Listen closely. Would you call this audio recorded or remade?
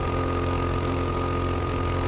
recorded